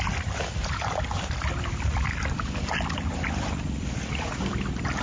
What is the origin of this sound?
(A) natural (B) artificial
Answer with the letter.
B